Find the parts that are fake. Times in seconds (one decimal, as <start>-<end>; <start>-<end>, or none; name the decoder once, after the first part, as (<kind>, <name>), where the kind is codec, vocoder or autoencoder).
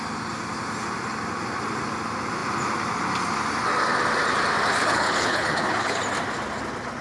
4.8-6.0 (codec, HILCodec)